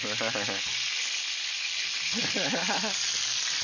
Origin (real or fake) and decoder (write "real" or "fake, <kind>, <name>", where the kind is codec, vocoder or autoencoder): real